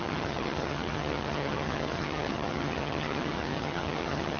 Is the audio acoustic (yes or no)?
no